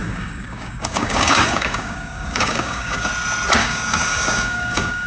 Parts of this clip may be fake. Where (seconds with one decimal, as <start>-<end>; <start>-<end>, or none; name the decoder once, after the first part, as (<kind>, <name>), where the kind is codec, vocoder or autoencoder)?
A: 0.0-3.1 (codec, DAC); 3.6-5.1